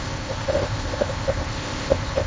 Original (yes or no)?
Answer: no